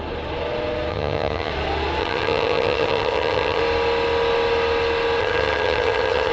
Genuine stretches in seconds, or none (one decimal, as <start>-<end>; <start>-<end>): 0.0-0.9; 1.5-2.0; 3.6-5.2